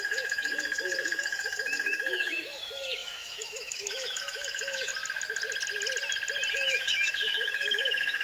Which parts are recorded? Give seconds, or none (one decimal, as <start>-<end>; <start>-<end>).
4.9-6.5